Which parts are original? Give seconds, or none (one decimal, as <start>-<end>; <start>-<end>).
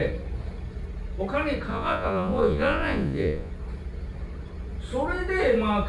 0.0-1.7; 3.5-5.9